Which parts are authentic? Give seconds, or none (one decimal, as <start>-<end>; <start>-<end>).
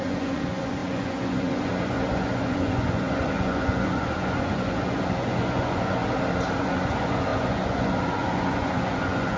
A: 6.0-6.6